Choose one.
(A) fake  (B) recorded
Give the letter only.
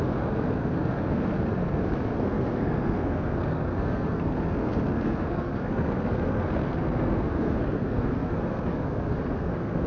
A